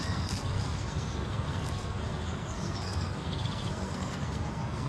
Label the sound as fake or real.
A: fake